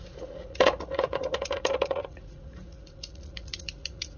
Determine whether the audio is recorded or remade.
remade